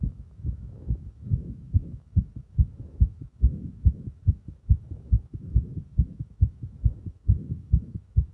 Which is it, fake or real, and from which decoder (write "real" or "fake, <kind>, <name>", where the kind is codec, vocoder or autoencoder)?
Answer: fake, autoencoder, DAC-VAE